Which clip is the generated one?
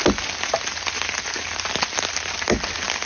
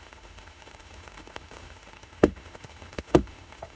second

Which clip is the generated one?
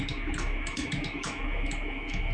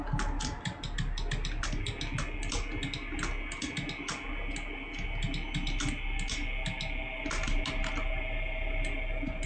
first